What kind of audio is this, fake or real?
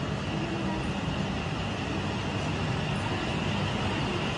real